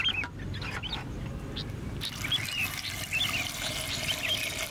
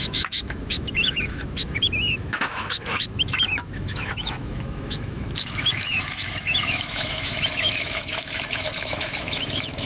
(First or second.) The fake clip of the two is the second